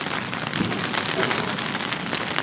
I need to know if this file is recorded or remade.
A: recorded